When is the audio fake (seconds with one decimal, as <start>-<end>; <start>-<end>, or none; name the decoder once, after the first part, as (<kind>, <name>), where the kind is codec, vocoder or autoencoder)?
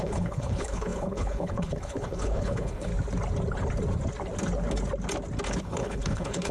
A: 0.0-2.9 (codec, HILCodec); 5.6-6.5